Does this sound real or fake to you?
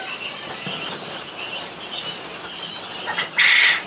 real